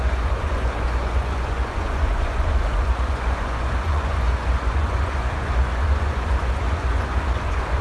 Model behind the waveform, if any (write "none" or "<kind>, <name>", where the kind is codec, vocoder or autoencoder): vocoder, Vocos